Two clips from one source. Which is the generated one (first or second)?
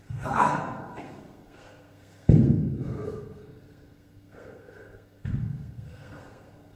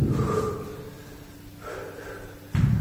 first